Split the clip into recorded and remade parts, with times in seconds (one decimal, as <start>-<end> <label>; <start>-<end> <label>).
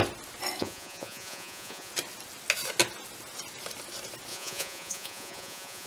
0.0-0.6 recorded; 0.6-1.9 remade; 1.9-4.3 recorded; 4.3-5.9 remade